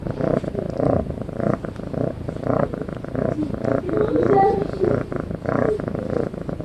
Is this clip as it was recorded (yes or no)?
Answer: yes